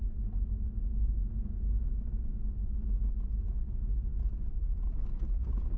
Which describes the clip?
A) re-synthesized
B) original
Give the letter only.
B